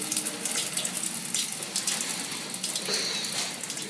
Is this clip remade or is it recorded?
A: recorded